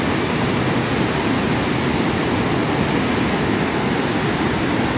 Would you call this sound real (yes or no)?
yes